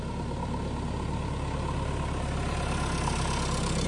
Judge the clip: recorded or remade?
recorded